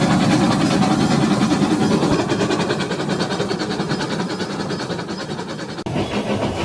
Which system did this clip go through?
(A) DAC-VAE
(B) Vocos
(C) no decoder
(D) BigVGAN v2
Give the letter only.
C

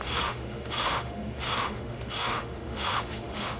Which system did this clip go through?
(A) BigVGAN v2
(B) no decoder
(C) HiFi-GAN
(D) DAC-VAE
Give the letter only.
D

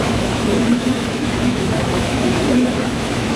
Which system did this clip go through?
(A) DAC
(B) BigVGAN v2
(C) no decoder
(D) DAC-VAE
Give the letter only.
D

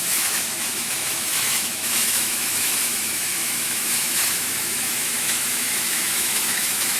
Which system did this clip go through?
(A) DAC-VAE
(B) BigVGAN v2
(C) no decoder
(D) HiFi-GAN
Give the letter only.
A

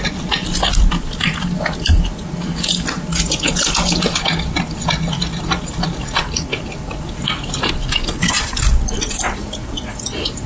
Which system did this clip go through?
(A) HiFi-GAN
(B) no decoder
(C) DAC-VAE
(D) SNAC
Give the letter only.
B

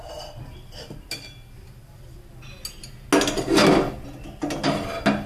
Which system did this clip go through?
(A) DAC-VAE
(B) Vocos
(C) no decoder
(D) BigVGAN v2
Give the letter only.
C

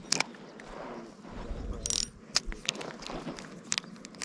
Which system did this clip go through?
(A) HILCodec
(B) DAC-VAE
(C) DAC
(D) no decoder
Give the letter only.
D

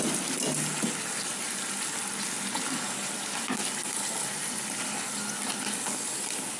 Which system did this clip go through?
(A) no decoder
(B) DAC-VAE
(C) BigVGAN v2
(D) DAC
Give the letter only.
A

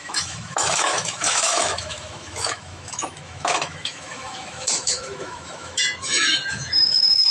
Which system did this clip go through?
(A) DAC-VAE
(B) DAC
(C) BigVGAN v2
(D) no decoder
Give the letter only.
A